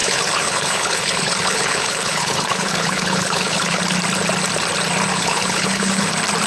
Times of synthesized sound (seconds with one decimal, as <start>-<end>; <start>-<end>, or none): 0.0-3.8; 5.1-6.1